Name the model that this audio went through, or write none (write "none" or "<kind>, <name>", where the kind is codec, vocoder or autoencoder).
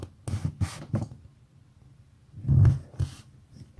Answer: none